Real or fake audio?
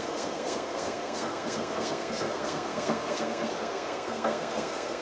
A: fake